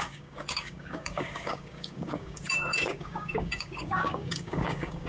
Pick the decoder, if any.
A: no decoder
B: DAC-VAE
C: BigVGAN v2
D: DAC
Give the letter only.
D